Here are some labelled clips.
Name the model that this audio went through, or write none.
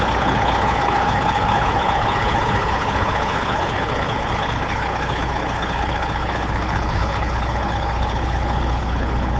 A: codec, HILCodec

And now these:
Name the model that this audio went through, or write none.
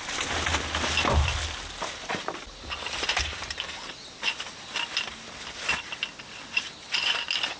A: none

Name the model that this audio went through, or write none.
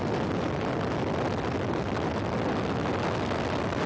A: none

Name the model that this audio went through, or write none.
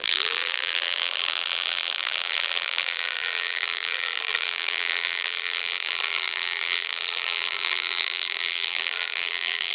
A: vocoder, BigVGAN v2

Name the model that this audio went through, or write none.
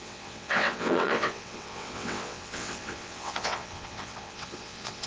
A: vocoder, WaveNeXt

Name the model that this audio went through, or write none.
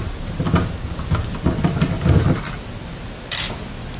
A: none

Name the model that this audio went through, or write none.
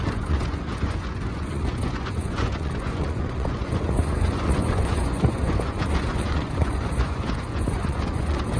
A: vocoder, Vocos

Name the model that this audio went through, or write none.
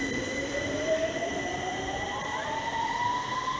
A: vocoder, BigVGAN v2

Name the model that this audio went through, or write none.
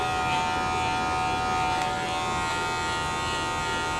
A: none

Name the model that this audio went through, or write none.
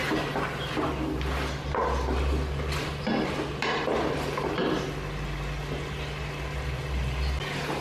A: none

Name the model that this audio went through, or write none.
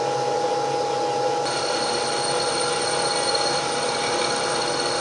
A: none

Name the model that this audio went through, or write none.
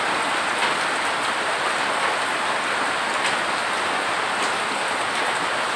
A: none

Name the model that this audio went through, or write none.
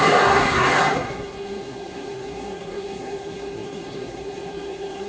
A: codec, SNAC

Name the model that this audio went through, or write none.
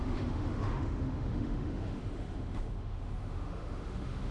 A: autoencoder, DAC-VAE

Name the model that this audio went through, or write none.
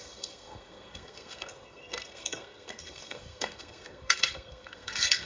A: codec, SNAC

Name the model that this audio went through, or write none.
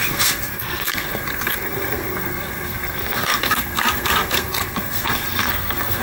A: codec, SNAC